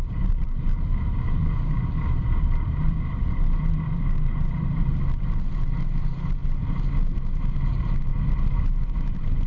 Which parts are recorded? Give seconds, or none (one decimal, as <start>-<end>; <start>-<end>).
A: 6.4-7.7; 8.1-8.7